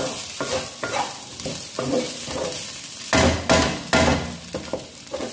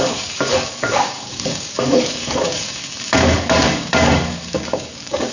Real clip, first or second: first